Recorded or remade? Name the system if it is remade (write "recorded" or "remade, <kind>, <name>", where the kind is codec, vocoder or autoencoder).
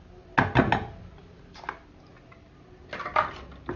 recorded